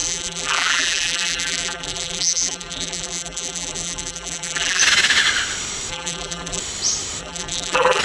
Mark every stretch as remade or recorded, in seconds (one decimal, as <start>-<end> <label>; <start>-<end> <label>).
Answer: 0.0-4.8 remade; 4.8-5.9 recorded; 5.9-6.6 remade; 6.6-7.2 recorded; 7.2-8.0 remade